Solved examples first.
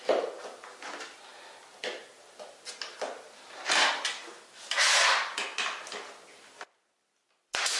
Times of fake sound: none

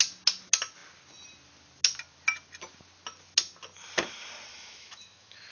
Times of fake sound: 4.5-5.5

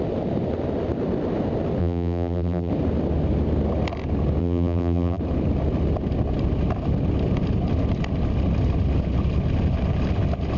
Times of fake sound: 1.8-2.7; 4.4-5.2